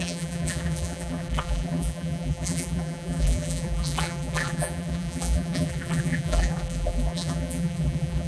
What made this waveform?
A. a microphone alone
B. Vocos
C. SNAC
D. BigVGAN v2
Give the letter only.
D